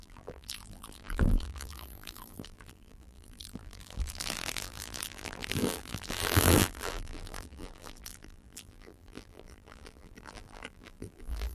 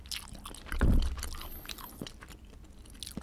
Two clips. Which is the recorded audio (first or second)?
second